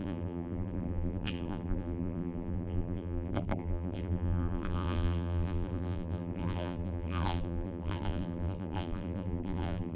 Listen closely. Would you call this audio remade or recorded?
remade